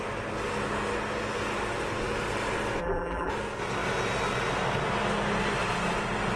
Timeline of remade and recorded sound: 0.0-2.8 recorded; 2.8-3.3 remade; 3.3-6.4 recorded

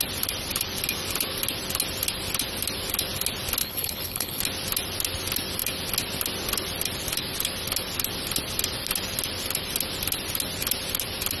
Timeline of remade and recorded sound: 0.0-3.6 recorded; 3.6-4.4 remade; 4.4-11.4 recorded

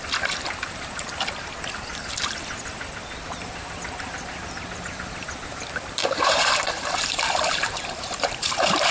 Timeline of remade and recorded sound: 0.0-6.0 recorded; 6.0-8.9 remade

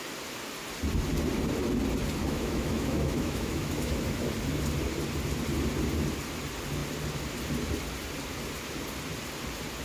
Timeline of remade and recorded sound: 0.0-2.2 recorded; 2.2-4.3 remade; 4.3-9.8 recorded

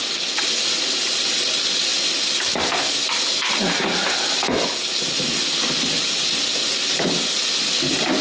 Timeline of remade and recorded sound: 0.0-8.2 recorded